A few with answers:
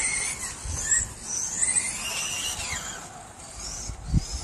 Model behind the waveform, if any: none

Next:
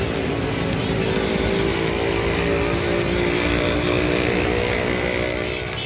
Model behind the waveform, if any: none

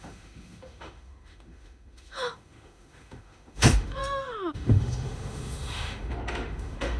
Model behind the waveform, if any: autoencoder, DAC-VAE